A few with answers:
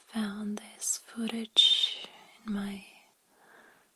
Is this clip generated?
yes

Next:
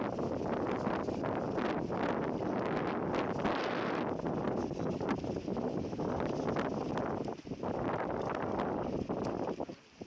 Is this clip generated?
no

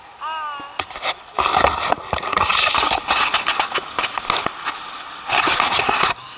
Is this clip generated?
no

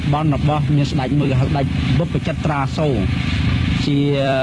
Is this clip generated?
yes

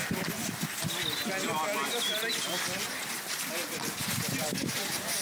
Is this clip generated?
no